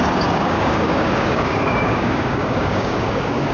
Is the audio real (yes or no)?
no